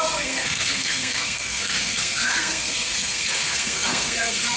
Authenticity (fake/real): fake